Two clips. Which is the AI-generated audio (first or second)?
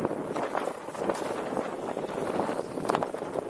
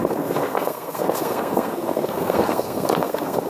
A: second